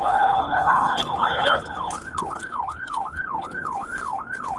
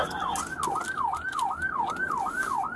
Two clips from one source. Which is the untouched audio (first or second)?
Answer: second